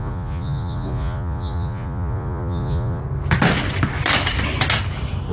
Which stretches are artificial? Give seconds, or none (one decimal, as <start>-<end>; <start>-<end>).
0.0-3.0